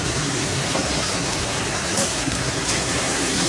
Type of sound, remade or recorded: remade